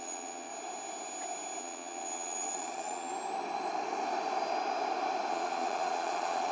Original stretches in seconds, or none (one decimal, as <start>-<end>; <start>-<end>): 0.5-1.6; 3.1-5.3